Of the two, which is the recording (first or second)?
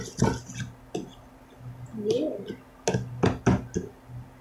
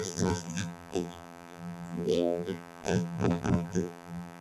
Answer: first